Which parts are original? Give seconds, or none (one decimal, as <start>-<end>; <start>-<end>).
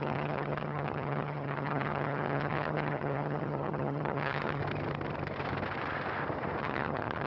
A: 4.6-6.6